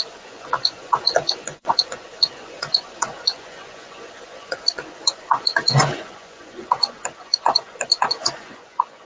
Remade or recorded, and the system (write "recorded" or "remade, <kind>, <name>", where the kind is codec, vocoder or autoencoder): remade, vocoder, Vocos